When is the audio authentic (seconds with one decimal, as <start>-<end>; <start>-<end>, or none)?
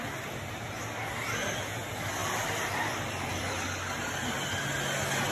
0.0-2.2; 3.5-5.3